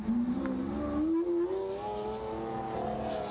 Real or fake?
real